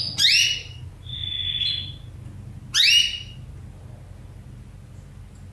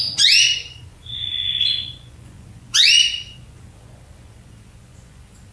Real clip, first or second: first